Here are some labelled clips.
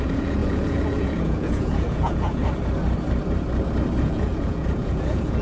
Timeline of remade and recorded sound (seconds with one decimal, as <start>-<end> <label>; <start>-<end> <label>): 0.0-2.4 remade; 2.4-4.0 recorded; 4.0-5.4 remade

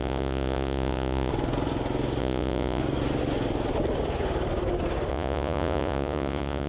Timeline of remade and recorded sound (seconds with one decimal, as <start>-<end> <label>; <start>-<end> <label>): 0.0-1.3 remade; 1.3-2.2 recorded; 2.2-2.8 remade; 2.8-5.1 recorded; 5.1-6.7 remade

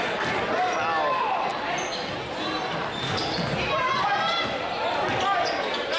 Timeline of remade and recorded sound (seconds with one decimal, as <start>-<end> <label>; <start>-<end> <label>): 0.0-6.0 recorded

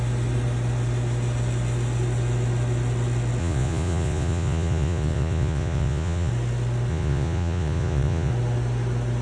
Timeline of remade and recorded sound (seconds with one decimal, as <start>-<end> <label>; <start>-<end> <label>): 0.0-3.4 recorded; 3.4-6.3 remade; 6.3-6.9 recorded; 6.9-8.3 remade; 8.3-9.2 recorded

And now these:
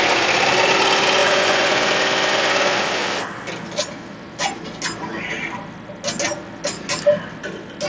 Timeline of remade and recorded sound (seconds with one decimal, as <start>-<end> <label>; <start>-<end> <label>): 0.0-1.2 recorded; 1.2-1.9 remade; 1.9-7.9 recorded